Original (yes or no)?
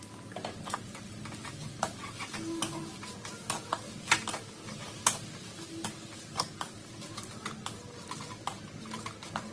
yes